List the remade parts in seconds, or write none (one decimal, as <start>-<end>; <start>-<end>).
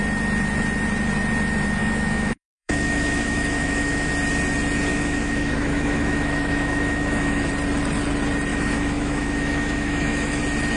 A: 1.8-4.1; 4.9-7.5; 8.5-10.4